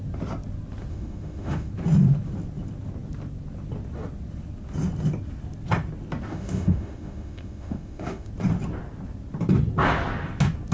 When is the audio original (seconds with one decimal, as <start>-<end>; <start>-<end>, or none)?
0.0-0.9; 1.7-6.3; 8.3-10.7